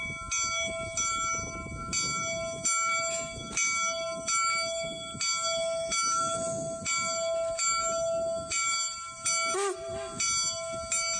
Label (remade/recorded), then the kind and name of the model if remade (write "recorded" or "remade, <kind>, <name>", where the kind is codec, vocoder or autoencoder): recorded